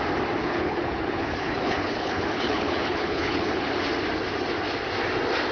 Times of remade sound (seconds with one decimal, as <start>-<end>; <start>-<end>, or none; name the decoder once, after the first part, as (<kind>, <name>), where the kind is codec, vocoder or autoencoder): 0.4-3.7 (codec, HILCodec)